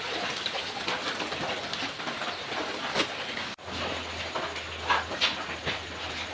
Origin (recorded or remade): recorded